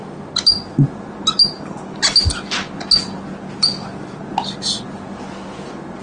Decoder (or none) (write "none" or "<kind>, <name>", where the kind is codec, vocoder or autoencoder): none